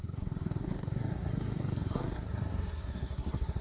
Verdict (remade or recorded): remade